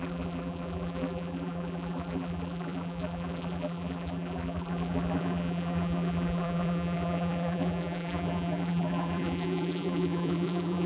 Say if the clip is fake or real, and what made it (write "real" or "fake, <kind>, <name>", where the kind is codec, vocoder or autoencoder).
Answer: fake, vocoder, BigVGAN v2